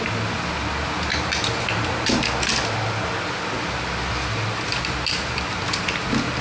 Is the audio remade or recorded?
recorded